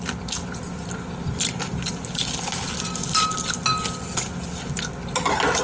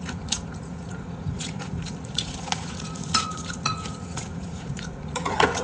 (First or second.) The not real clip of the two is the second